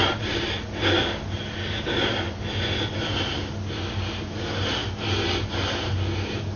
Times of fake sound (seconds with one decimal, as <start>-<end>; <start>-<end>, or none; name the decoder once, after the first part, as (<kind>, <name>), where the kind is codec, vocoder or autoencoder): none